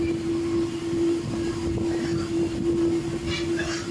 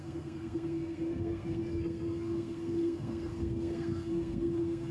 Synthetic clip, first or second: second